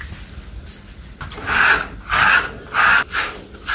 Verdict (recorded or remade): recorded